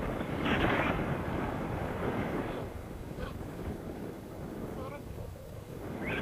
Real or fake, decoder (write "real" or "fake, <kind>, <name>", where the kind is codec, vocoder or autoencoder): fake, codec, DAC